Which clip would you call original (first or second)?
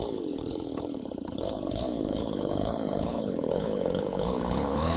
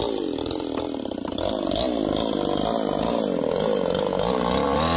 second